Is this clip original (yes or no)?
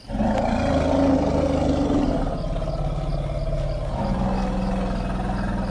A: yes